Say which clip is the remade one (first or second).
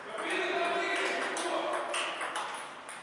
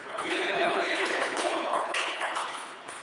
second